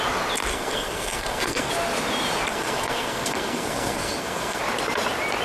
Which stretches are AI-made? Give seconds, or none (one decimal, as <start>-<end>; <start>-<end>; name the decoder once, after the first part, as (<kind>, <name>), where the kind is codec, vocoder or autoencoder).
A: 0.5-1.7 (codec, SNAC); 2.5-4.6

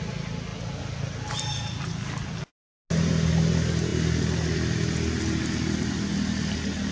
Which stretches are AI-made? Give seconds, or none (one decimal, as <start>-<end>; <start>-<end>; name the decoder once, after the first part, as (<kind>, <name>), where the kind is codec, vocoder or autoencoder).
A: none

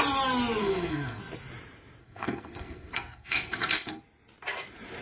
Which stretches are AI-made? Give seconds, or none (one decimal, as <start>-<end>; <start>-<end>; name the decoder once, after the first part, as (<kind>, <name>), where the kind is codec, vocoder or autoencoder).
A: 0.6-1.2 (codec, SNAC); 2.0-4.0

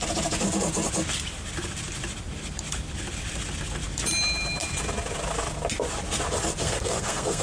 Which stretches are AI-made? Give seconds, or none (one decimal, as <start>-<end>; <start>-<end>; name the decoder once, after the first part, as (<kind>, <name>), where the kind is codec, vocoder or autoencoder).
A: 6.6-7.4 (codec, SNAC)

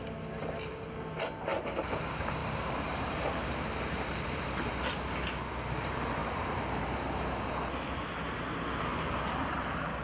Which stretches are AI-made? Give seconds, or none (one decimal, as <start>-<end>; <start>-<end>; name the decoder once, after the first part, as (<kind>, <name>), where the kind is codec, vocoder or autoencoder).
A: 1.5-2.0 (vocoder, BigVGAN v2); 2.4-4.9; 6.2-7.5

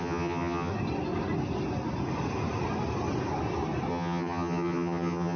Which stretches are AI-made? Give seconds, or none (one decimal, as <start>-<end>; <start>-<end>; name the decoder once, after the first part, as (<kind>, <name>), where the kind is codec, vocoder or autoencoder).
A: 0.0-0.7 (vocoder, HiFi-GAN); 3.9-5.4